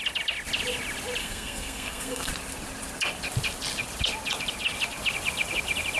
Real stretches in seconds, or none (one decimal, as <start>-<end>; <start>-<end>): 0.0-1.2; 2.3-6.0

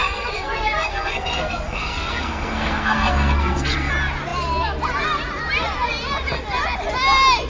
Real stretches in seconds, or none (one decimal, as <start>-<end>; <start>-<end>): 3.9-7.5

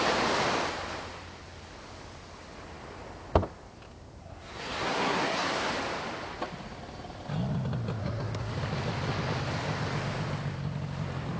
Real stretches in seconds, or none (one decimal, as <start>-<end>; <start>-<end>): 0.0-4.2; 5.7-8.0; 8.5-11.4

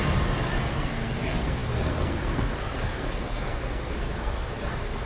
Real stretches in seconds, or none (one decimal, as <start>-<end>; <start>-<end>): 0.0-0.6

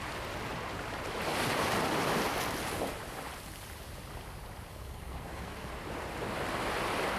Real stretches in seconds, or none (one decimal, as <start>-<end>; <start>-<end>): 0.0-4.7; 5.7-7.2

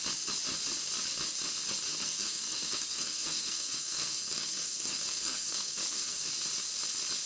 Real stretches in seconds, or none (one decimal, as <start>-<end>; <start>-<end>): 0.0-1.9; 6.3-7.3

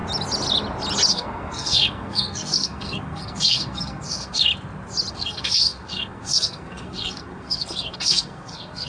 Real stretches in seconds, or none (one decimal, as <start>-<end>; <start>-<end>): 0.0-1.1; 4.5-5.1

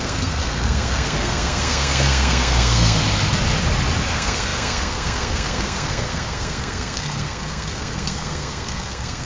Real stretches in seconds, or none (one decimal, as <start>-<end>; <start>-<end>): 3.0-4.1